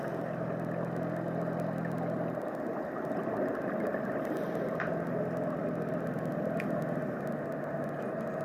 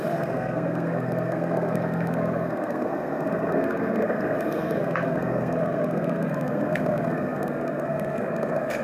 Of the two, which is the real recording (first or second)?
first